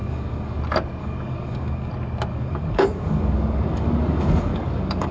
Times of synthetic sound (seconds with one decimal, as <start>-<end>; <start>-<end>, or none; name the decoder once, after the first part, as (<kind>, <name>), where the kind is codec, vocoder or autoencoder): 0.0-0.6 (codec, DAC); 1.0-1.9; 2.3-5.1